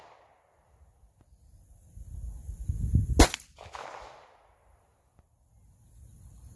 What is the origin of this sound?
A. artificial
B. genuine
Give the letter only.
B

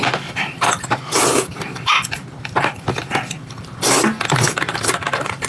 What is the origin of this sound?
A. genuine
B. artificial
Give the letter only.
B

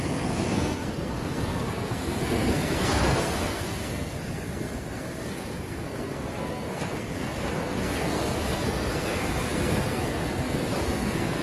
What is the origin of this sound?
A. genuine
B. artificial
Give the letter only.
B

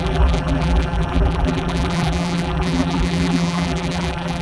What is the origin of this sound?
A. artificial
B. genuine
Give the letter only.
A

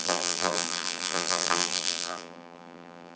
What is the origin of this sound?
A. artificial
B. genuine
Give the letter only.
A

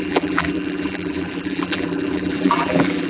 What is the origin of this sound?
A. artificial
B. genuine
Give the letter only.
A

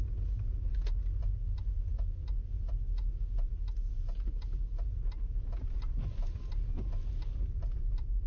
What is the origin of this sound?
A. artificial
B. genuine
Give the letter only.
B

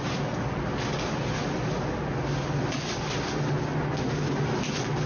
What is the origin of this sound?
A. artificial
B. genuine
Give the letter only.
B